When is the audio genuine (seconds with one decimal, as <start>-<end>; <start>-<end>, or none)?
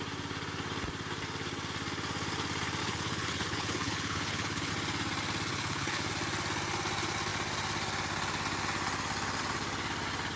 0.0-2.8; 4.7-5.5; 6.1-10.4